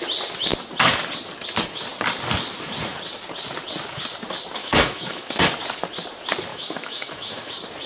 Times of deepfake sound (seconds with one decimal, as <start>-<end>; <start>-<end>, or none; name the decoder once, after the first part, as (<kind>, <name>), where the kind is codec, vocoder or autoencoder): 4.6-5.3 (autoencoder, DAC-VAE); 6.5-7.5